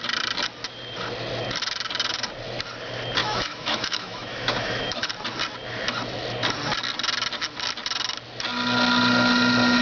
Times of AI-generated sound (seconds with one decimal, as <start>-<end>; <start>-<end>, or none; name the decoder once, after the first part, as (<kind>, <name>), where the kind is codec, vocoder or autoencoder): 3.2-5.1 (autoencoder, DAC-VAE)